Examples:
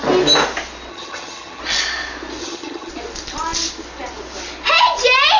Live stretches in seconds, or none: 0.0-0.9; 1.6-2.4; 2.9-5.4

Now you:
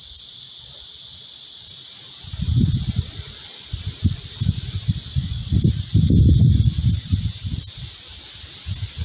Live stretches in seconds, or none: 0.0-9.0